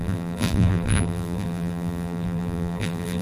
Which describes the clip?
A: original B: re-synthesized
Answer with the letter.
B